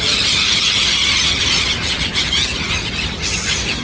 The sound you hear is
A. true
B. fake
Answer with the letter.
A